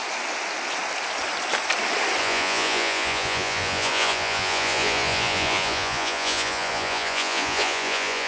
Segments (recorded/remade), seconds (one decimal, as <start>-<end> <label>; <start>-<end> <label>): 0.0-2.2 recorded; 2.2-8.3 remade